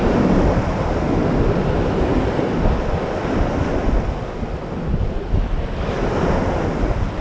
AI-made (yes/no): no